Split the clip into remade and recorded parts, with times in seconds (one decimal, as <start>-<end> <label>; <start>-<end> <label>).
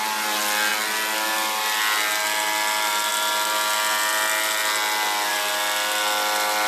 0.0-6.7 recorded